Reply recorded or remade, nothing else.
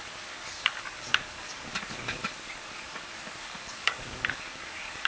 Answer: remade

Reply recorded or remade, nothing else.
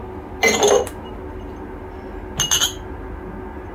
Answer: recorded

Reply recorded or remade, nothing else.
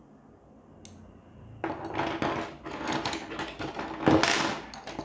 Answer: recorded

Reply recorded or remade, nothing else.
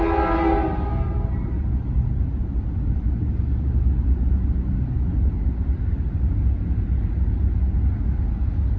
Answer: recorded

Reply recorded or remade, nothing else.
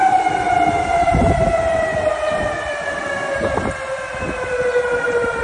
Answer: recorded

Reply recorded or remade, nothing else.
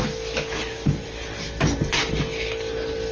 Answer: recorded